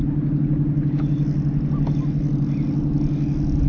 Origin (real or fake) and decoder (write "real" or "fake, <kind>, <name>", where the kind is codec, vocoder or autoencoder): real